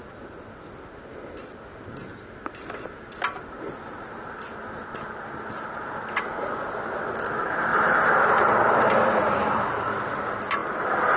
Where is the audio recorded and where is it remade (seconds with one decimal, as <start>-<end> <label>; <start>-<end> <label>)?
0.0-7.7 recorded; 7.7-9.9 remade; 9.9-10.6 recorded; 10.6-11.2 remade